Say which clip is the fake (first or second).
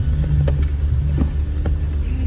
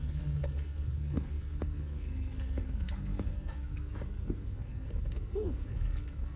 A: second